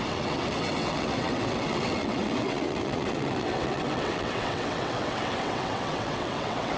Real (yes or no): no